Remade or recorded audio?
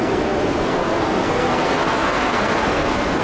remade